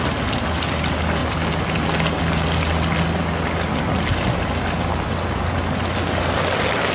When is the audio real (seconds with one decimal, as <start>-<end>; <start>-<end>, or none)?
0.0-6.9